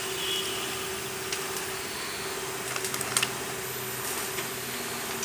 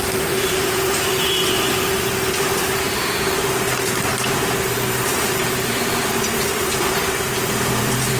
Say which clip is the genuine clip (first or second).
first